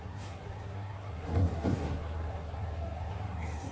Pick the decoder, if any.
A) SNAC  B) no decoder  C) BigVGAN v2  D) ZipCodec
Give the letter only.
A